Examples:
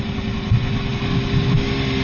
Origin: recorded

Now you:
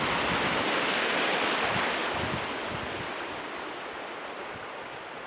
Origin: recorded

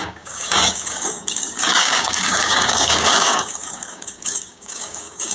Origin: remade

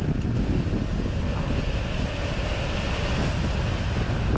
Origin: recorded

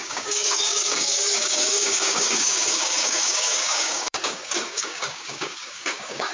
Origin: remade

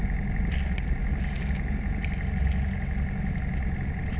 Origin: recorded